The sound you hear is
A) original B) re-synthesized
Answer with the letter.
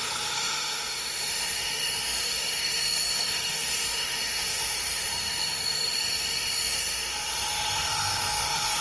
B